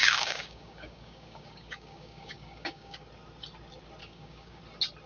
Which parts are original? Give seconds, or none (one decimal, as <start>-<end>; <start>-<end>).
3.1-4.0; 4.6-5.1